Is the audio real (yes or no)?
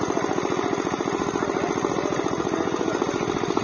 yes